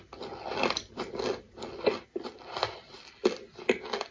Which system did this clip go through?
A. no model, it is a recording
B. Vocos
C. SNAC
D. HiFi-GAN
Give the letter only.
A